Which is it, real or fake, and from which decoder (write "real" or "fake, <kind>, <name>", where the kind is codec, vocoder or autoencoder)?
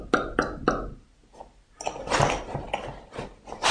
real